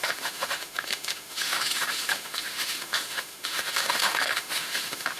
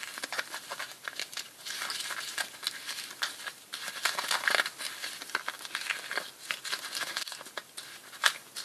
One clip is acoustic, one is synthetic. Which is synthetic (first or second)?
first